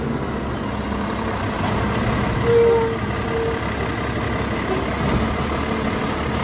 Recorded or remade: recorded